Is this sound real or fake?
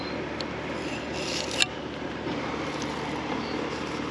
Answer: real